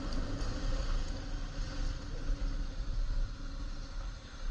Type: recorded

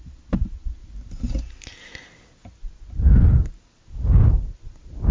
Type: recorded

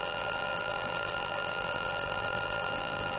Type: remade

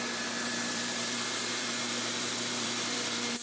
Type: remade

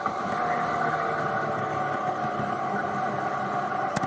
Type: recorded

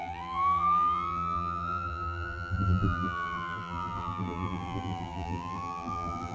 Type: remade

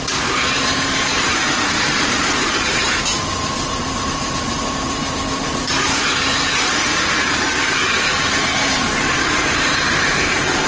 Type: remade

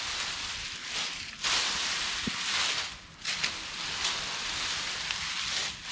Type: recorded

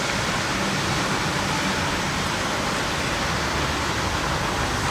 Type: remade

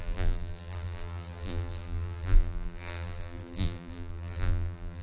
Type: remade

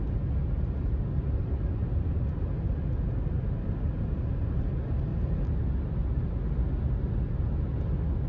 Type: recorded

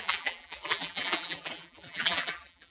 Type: remade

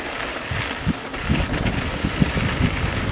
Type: recorded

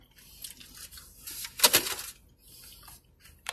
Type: recorded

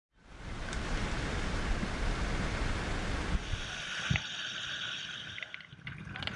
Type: recorded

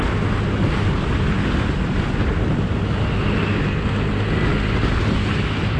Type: recorded